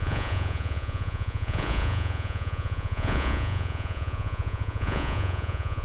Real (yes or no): no